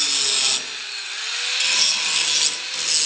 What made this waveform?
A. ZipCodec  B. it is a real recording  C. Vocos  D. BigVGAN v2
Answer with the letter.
B